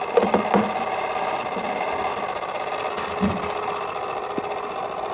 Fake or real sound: real